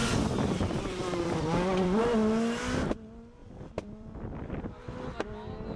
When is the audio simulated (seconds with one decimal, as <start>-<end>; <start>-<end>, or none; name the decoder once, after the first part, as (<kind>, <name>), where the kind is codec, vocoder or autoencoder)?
0.0-2.0 (vocoder, BigVGAN v2); 3.4-4.6